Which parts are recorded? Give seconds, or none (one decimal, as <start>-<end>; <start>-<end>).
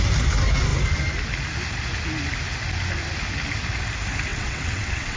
0.0-4.3